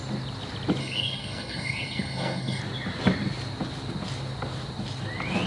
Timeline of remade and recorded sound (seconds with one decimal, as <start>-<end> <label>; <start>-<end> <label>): 0.0-0.8 recorded; 0.8-2.6 remade; 2.6-5.5 recorded